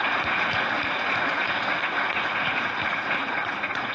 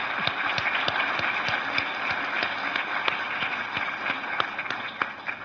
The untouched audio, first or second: second